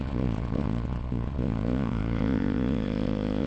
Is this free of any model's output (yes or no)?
no